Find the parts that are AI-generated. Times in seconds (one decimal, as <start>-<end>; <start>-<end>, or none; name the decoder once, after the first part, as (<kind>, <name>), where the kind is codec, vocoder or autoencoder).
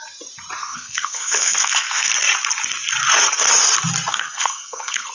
0.6-2.1 (codec, SNAC); 4.1-5.1